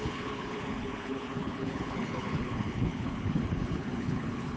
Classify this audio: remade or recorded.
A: remade